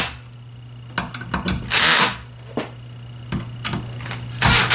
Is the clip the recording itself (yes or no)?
yes